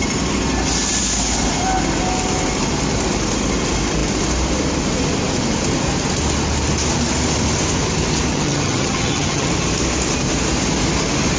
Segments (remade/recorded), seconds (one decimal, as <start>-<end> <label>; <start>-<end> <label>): 0.0-8.3 recorded; 8.3-9.5 remade; 9.5-11.4 recorded